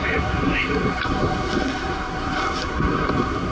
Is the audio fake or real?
fake